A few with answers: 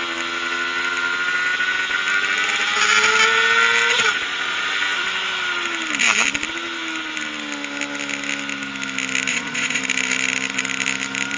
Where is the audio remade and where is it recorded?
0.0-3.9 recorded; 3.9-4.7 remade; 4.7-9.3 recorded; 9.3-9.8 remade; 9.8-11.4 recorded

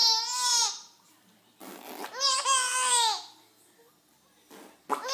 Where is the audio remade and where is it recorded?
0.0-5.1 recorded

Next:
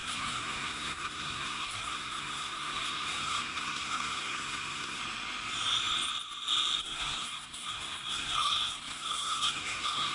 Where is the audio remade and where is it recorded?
0.0-5.0 remade; 5.0-6.8 recorded; 6.8-10.1 remade

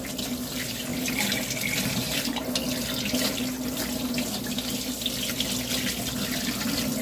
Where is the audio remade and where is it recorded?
0.0-0.9 remade; 0.9-1.9 recorded; 1.9-2.6 remade; 2.6-7.0 recorded

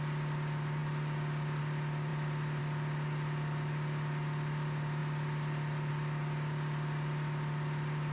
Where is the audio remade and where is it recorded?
0.0-8.1 recorded

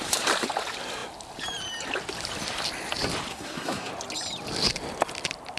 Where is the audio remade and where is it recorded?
0.0-3.3 recorded; 3.3-3.9 remade; 3.9-5.6 recorded

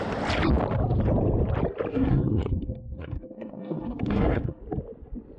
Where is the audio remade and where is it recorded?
0.0-1.9 recorded; 1.9-4.6 remade; 4.6-5.4 recorded

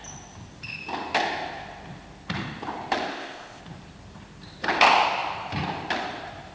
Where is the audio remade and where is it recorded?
0.0-3.1 recorded; 3.1-3.6 remade; 3.6-6.5 recorded